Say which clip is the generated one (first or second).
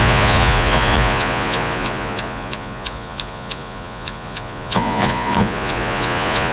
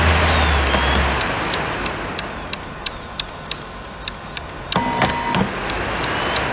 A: first